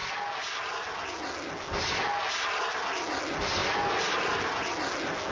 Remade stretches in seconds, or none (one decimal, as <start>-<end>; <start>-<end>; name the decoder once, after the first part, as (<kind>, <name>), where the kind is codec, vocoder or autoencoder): none